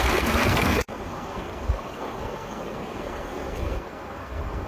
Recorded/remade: remade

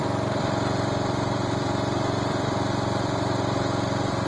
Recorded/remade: remade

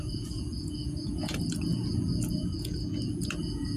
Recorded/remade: remade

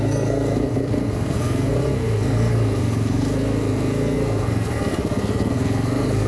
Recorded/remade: remade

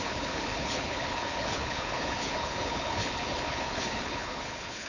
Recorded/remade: remade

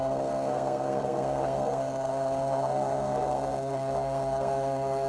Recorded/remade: remade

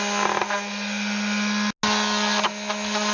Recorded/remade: recorded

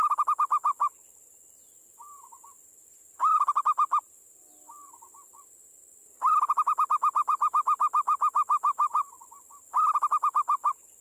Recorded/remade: remade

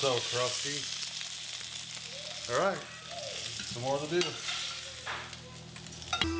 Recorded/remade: recorded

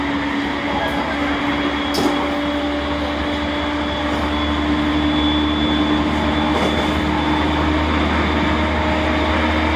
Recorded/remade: recorded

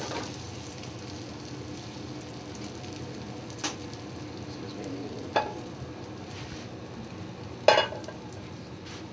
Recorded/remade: recorded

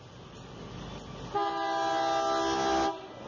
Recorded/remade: recorded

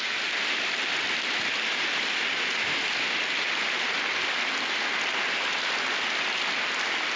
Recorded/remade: recorded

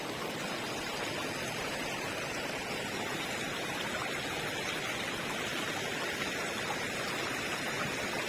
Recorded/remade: recorded